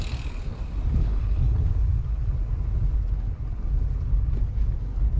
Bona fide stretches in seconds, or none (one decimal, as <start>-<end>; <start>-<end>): 0.0-1.0; 1.6-5.2